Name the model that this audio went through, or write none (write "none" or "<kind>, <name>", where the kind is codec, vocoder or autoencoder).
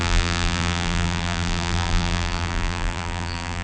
vocoder, BigVGAN v2